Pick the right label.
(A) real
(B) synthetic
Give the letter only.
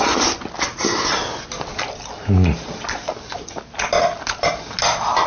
A